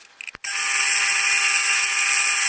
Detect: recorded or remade recorded